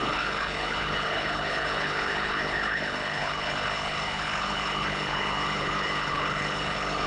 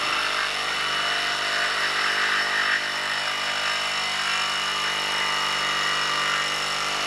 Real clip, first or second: second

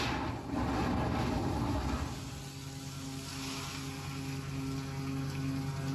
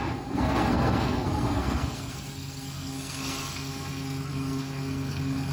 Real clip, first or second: first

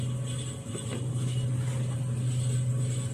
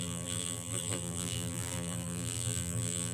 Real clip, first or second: first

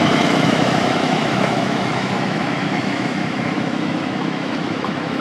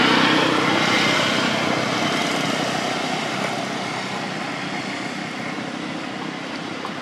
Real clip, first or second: second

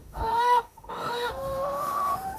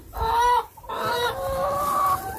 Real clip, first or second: second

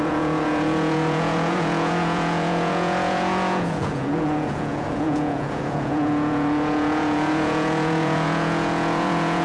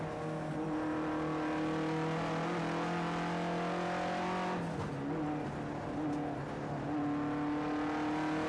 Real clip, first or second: second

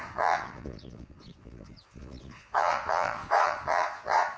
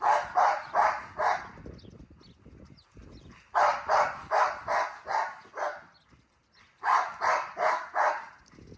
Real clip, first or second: second